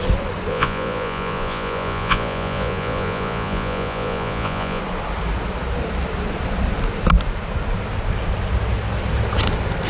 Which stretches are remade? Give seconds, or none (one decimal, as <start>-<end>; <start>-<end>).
0.5-4.8